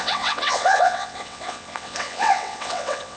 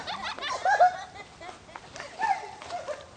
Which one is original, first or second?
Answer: second